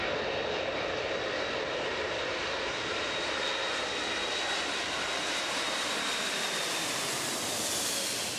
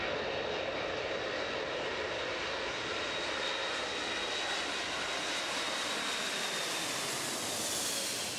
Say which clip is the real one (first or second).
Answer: second